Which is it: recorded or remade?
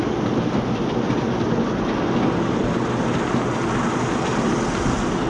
recorded